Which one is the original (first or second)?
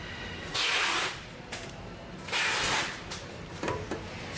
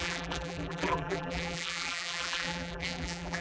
first